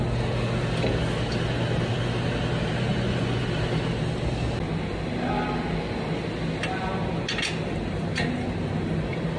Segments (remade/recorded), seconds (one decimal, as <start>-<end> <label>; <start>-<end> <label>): 0.0-2.9 recorded; 2.9-3.4 remade; 3.4-9.4 recorded